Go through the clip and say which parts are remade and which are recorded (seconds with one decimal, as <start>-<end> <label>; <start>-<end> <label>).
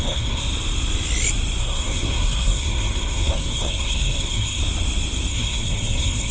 0.0-0.4 remade; 0.4-1.6 recorded; 1.6-4.6 remade; 4.6-5.3 recorded; 5.3-6.3 remade